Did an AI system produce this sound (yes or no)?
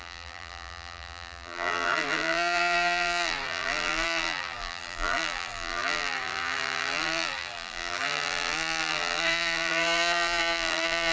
yes